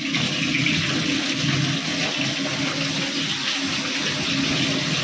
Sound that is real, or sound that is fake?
real